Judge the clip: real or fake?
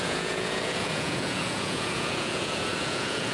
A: fake